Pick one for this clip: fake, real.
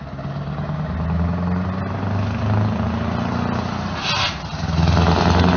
real